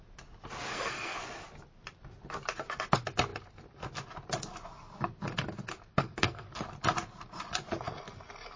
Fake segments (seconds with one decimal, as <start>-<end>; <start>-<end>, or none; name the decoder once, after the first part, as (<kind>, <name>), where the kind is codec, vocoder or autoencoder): 0.7-1.2 (codec, SNAC); 5.9-6.5